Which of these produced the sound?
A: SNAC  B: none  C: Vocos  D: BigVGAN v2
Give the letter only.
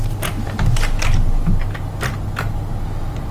B